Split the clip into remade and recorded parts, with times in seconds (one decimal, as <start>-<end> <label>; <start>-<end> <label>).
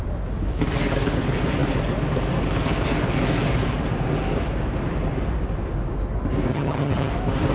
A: 0.0-6.5 recorded; 6.5-7.1 remade; 7.1-7.5 recorded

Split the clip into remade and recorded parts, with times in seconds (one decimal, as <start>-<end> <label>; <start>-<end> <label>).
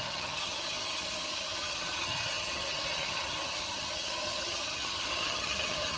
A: 0.0-6.0 remade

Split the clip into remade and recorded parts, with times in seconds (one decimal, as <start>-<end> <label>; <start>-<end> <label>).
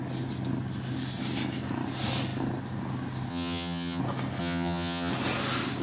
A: 0.0-3.3 recorded; 3.3-4.0 remade; 4.0-4.4 recorded; 4.4-5.1 remade; 5.1-5.8 recorded